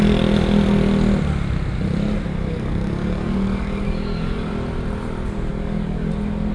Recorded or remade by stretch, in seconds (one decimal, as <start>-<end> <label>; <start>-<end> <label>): 0.0-2.3 recorded; 2.3-4.5 remade; 4.5-5.5 recorded; 5.5-6.1 remade; 6.1-6.5 recorded